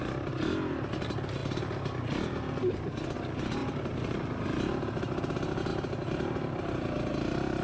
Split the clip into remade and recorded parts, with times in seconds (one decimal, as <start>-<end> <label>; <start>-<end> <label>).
0.0-3.6 recorded; 3.6-5.2 remade; 5.2-5.7 recorded; 5.7-6.7 remade; 6.7-7.6 recorded